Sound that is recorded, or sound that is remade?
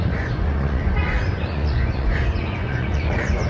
remade